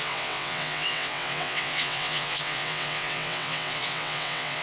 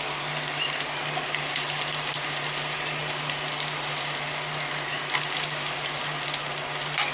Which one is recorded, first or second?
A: second